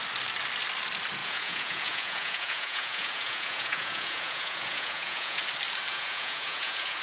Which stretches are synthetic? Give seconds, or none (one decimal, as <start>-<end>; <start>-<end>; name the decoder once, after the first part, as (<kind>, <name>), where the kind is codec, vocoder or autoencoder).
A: 1.2-5.4 (vocoder, Vocos); 5.9-7.0